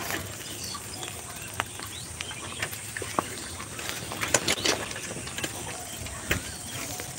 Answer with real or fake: real